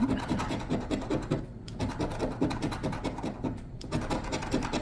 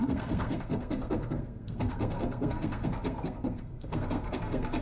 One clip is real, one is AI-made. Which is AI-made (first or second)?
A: second